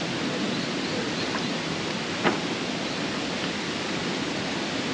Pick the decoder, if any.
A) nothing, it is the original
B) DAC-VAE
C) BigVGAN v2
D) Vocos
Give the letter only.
A